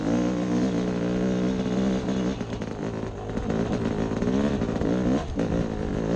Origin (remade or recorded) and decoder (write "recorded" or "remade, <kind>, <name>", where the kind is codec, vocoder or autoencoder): recorded